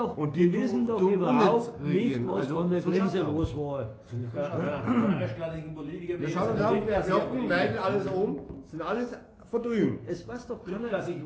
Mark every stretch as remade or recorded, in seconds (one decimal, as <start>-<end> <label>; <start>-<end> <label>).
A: 0.0-4.2 remade; 4.2-8.3 recorded; 8.3-11.3 remade